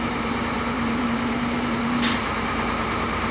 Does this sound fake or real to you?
fake